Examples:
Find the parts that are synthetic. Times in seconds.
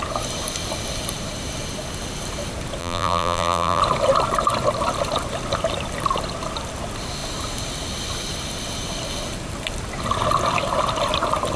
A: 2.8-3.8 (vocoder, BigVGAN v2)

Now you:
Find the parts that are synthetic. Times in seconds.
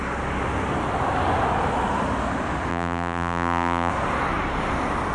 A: 2.7-3.9 (vocoder, BigVGAN v2)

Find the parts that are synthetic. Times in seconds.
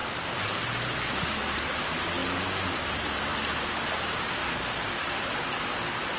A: 0.0-1.6 (vocoder, BigVGAN v2)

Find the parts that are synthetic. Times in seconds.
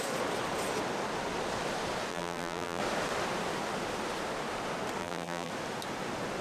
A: 2.1-2.8 (vocoder, BigVGAN v2); 5.0-5.5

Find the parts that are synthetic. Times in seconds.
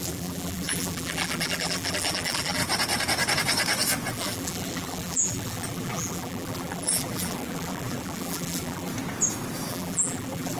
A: 0.0-2.6 (vocoder, BigVGAN v2); 4.1-8.9; 9.7-10.6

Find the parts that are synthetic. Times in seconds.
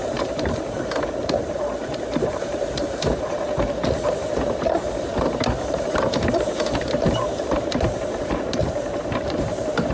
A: 0.0-5.1 (vocoder, BigVGAN v2); 5.8-8.6; 9.2-9.9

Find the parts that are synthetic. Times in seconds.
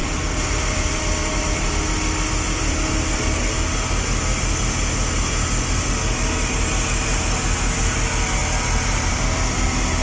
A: 0.0-1.7 (vocoder, BigVGAN v2)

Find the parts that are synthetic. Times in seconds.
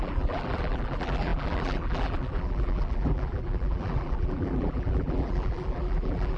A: 0.0-6.4 (vocoder, BigVGAN v2)